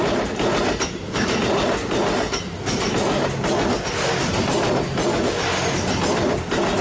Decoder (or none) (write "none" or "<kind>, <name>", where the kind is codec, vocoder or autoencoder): none